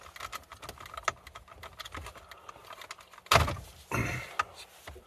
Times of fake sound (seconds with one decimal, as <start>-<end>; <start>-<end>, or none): none